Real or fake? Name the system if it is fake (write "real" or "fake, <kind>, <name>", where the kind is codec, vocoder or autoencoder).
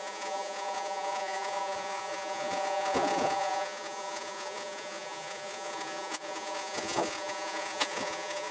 fake, vocoder, Vocos